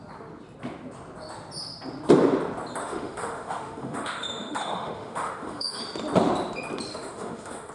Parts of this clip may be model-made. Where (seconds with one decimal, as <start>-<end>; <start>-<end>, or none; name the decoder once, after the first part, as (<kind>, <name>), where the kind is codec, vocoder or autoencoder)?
2.8-5.8 (autoencoder, DAC-VAE); 6.9-7.7